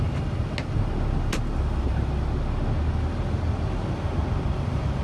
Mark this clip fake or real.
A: real